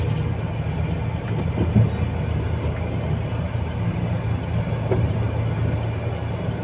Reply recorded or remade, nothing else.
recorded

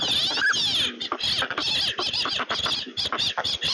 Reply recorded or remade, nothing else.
recorded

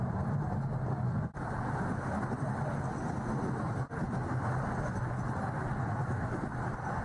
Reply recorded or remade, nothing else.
recorded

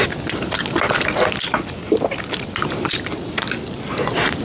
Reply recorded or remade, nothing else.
recorded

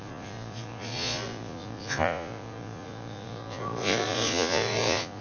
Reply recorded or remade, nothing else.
remade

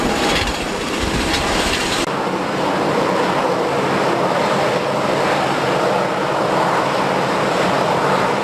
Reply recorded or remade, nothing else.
recorded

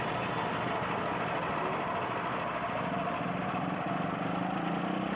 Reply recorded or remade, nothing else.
recorded